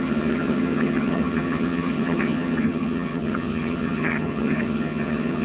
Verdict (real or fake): fake